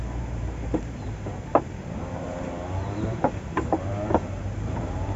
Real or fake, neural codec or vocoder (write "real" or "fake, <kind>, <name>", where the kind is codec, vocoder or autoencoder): fake, vocoder, BigVGAN v2